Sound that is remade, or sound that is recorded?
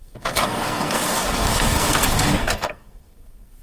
remade